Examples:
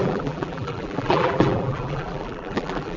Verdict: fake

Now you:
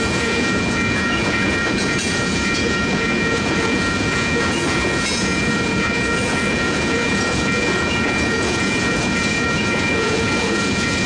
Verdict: fake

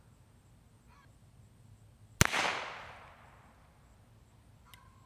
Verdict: real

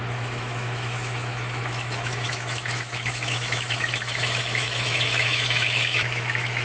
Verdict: fake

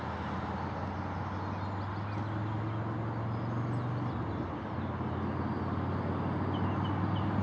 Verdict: real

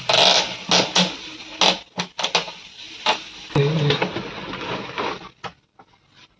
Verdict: real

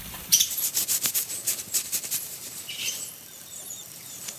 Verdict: fake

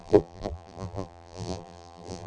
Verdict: fake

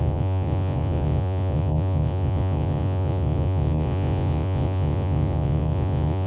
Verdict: fake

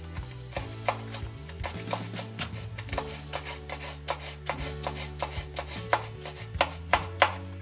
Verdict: real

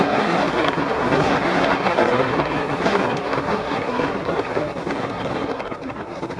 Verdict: fake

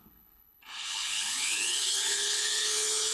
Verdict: fake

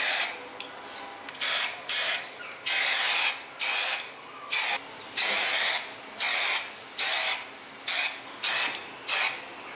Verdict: real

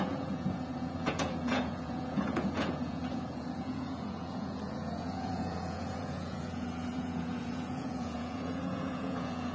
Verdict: fake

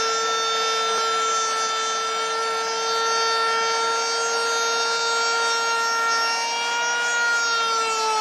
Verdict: real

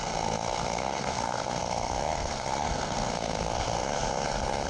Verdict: fake